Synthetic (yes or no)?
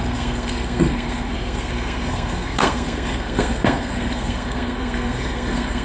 yes